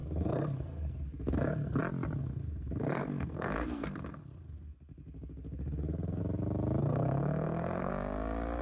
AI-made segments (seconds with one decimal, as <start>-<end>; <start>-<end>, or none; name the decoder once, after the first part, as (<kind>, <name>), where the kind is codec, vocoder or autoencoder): 0.0-1.8 (codec, SNAC); 2.2-6.2; 6.8-7.9

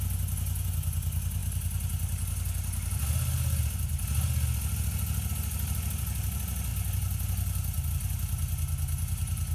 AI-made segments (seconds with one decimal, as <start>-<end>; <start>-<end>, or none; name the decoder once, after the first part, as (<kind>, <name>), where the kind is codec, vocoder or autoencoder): none

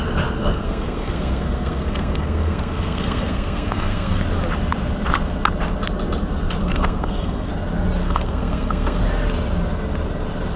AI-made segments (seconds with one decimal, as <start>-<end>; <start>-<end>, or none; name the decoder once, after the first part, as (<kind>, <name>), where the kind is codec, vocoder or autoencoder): 0.4-4.2 (codec, SNAC); 6.6-7.5; 8.0-9.0

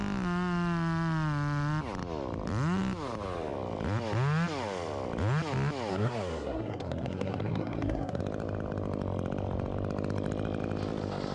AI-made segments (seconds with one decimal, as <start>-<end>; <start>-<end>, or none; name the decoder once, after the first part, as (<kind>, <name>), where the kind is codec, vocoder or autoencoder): 5.9-8.2 (codec, SNAC)

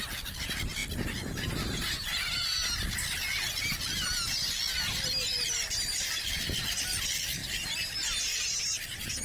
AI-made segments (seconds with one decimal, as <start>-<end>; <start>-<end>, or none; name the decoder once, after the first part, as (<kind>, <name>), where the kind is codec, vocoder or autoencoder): none